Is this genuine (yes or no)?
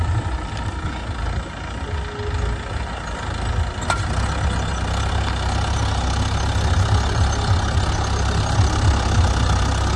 yes